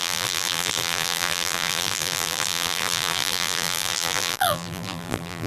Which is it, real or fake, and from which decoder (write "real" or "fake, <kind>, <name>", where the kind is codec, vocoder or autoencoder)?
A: fake, vocoder, BigVGAN v2